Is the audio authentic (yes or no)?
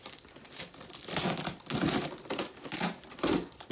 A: yes